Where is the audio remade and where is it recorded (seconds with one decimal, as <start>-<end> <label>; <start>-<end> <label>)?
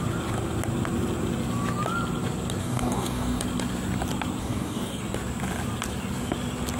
0.0-2.6 recorded; 2.6-3.4 remade; 3.4-4.4 recorded; 4.4-5.0 remade; 5.0-6.8 recorded